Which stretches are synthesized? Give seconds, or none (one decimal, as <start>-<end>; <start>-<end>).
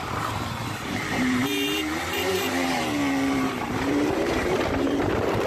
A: 0.0-5.5